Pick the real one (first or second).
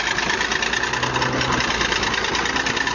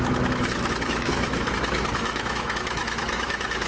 first